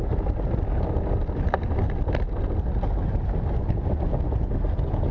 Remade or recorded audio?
recorded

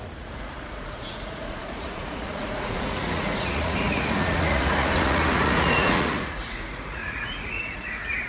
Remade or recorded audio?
remade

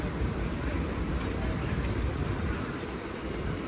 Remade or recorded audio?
recorded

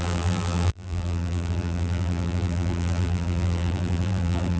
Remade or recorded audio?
remade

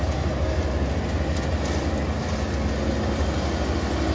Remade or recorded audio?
recorded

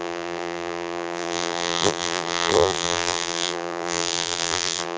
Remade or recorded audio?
remade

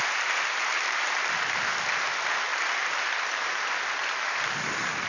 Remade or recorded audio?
recorded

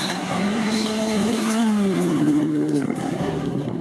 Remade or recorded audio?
remade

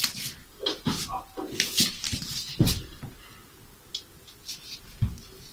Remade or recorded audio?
recorded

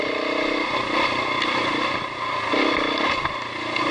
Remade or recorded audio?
recorded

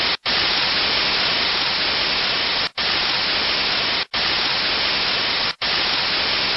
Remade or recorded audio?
recorded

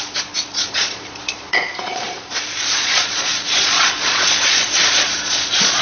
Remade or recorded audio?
remade